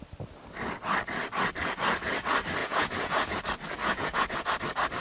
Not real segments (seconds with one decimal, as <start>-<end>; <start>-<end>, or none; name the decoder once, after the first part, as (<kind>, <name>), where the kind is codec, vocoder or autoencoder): 2.6-3.4 (vocoder, Vocos); 3.8-4.5